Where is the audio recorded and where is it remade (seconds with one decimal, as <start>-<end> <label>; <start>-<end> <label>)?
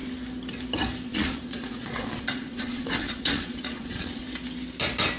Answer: 0.0-1.1 recorded; 1.1-4.2 remade; 4.2-5.2 recorded